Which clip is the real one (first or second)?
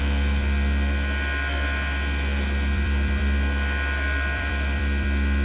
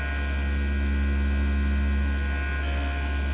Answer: second